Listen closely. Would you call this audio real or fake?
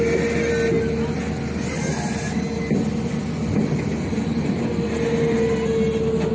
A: real